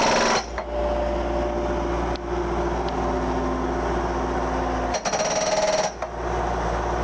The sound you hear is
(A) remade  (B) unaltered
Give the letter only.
B